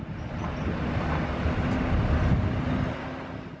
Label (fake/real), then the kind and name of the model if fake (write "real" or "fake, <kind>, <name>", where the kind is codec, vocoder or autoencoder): real